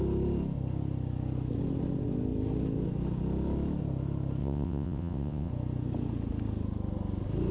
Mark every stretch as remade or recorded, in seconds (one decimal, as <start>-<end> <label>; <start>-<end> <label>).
0.0-4.4 recorded; 4.4-5.5 remade; 5.5-7.5 recorded